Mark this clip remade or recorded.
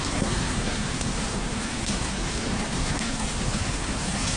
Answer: remade